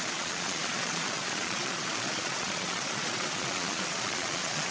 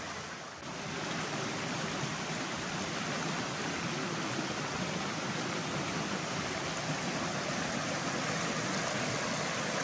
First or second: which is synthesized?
first